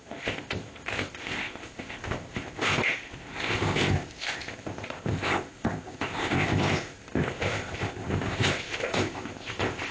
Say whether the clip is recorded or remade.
remade